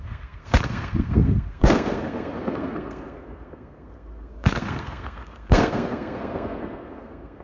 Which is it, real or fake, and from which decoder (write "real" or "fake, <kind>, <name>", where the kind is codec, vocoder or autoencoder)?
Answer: fake, codec, SNAC